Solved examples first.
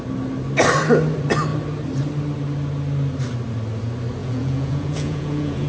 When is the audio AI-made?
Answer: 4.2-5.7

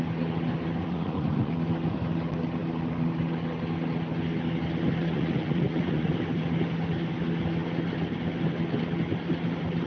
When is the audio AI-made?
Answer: 0.8-1.5; 5.0-6.1